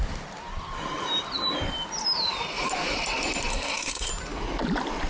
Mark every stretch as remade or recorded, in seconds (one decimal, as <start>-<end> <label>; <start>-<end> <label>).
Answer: 0.0-3.5 recorded; 3.5-4.1 remade; 4.1-5.1 recorded